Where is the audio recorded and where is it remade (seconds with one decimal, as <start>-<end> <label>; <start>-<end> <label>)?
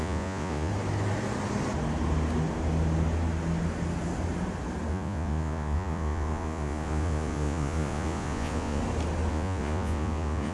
0.0-0.7 remade; 0.7-4.9 recorded; 4.9-8.8 remade; 8.8-9.3 recorded; 9.3-10.5 remade